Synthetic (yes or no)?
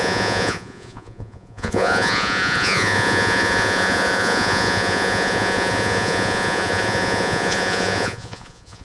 yes